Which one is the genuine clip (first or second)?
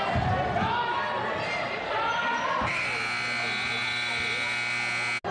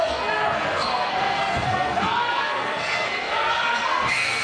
first